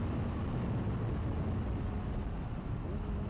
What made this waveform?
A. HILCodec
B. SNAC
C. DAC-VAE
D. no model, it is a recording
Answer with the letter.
D